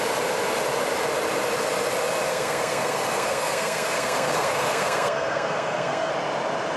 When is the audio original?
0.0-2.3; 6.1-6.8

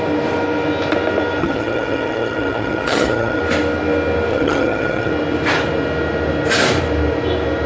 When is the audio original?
0.0-1.4; 3.4-4.3; 5.1-7.7

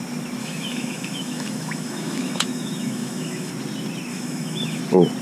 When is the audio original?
0.0-0.4; 3.5-4.1; 4.8-5.2

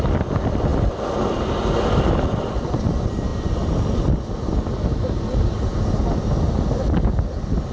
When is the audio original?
0.0-7.7

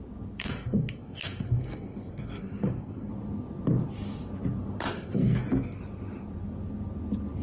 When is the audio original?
0.0-0.4; 3.1-4.9; 5.8-7.4